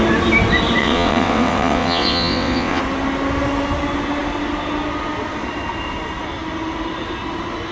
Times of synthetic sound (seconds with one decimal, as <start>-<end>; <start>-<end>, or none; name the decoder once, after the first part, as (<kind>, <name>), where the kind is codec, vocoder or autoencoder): 0.8-2.8 (vocoder, WaveNeXt)